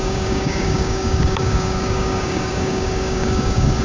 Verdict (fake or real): fake